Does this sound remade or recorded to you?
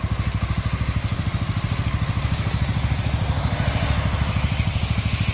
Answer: recorded